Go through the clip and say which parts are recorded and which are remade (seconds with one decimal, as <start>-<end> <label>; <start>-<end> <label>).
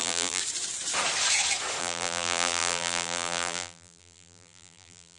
0.0-0.4 remade; 0.4-1.8 recorded; 1.8-5.2 remade